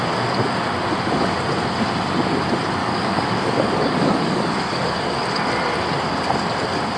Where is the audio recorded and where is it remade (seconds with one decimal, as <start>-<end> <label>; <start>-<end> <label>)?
0.0-2.8 recorded; 2.8-5.2 remade; 5.2-7.0 recorded